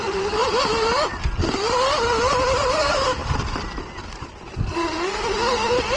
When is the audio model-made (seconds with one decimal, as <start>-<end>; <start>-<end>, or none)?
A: none